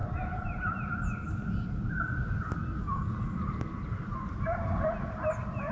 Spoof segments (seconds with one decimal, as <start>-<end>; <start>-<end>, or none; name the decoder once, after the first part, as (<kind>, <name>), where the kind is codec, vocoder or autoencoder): none